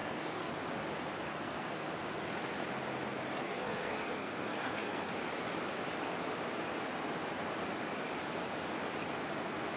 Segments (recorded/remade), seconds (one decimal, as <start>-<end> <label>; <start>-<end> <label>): 0.0-0.5 remade; 0.5-1.3 recorded; 1.3-1.9 remade; 1.9-3.4 recorded; 3.4-5.1 remade; 5.1-9.8 recorded